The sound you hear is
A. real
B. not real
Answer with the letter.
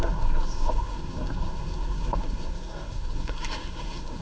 B